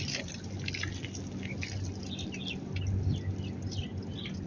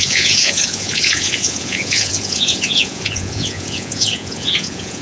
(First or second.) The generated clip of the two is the second